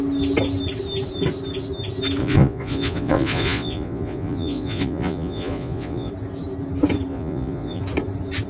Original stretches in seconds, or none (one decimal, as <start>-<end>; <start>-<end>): 0.0-2.2; 6.1-7.1; 7.8-8.5